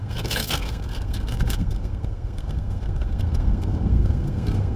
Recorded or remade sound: remade